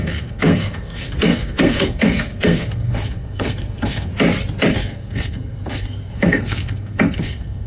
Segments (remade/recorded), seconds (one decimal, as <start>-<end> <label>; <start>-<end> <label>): 0.0-4.1 remade; 4.1-4.7 recorded; 4.7-7.7 remade